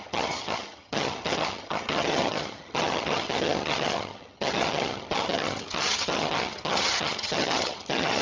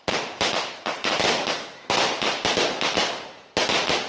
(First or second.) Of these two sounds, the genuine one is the second